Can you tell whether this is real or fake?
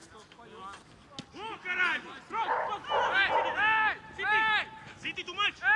real